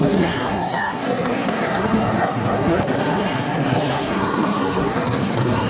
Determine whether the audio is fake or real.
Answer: fake